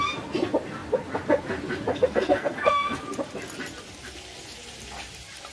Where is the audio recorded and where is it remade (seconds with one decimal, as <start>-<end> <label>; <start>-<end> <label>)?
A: 0.0-1.9 recorded; 1.9-3.0 remade; 3.0-5.5 recorded